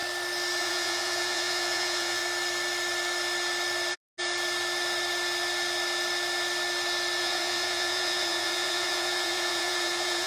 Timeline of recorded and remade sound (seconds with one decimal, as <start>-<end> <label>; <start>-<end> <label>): 0.0-0.6 recorded; 0.6-2.2 remade; 2.2-7.2 recorded; 7.2-10.3 remade